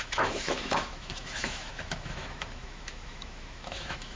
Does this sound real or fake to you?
fake